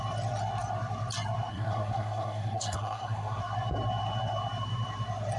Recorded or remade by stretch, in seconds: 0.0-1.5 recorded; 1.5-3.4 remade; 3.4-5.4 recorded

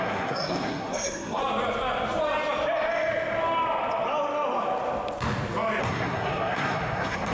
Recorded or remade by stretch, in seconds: 0.0-1.4 remade; 1.4-5.8 recorded; 5.8-7.3 remade

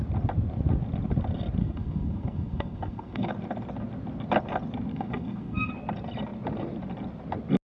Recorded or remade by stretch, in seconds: 0.0-1.6 recorded; 1.6-3.3 remade; 3.3-4.9 recorded; 4.9-5.7 remade; 5.7-7.7 recorded

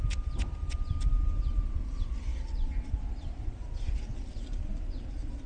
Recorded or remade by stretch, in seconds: 0.0-5.5 recorded